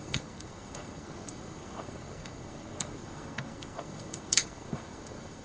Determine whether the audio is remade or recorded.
remade